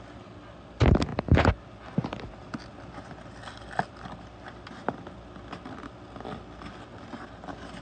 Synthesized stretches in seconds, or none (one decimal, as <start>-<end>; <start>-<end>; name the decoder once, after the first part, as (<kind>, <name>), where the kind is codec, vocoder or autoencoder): none